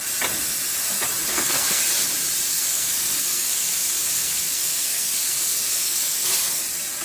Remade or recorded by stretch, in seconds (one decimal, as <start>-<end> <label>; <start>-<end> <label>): 0.0-1.3 recorded; 1.3-1.8 remade; 1.8-2.5 recorded; 2.5-6.6 remade; 6.6-7.0 recorded